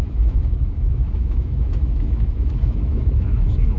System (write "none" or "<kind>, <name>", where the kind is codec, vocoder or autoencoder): autoencoder, DAC-VAE